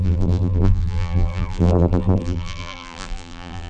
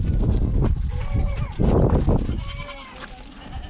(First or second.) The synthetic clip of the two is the first